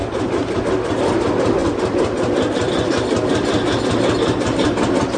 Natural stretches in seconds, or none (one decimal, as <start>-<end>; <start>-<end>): 0.0-5.2